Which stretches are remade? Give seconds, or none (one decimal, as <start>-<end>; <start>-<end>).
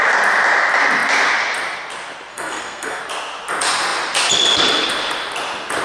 2.3-3.0